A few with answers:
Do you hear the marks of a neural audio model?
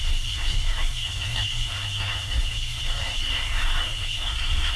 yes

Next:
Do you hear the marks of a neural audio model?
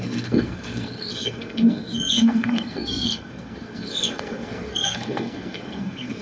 yes